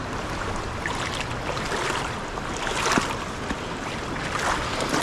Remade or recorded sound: recorded